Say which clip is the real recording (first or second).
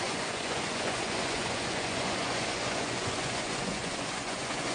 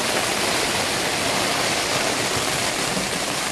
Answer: second